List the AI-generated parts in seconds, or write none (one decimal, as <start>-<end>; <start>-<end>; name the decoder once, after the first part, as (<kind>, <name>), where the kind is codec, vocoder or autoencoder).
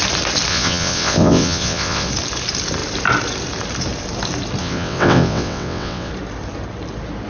0.5-2.1 (vocoder, WaveNeXt); 4.6-6.1